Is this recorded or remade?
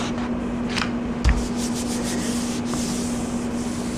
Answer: recorded